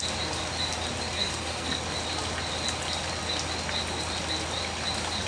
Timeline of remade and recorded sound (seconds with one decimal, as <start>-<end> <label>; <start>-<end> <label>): 0.0-1.2 recorded; 1.2-1.8 remade; 1.8-5.3 recorded